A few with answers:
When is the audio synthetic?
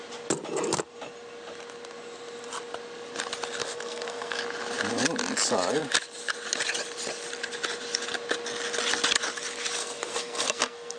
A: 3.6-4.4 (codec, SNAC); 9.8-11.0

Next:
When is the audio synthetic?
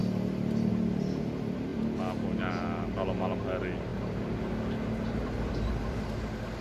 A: none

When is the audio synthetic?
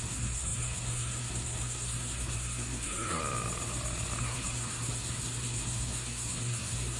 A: 0.0-3.2 (codec, SNAC); 4.2-7.0